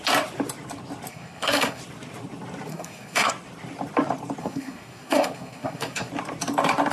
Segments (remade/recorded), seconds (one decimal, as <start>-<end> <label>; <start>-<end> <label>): 0.0-1.1 recorded; 1.1-1.8 remade; 1.8-2.7 recorded; 2.7-3.3 remade; 3.3-4.4 recorded; 4.4-6.1 remade; 6.1-6.9 recorded